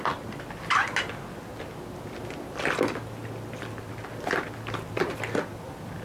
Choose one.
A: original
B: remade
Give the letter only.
A